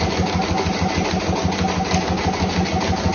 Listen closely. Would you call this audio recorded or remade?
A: recorded